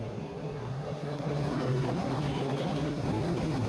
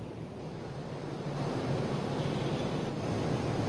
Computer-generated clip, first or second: first